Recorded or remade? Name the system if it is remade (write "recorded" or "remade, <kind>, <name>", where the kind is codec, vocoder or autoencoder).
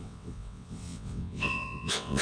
remade, vocoder, WaveNeXt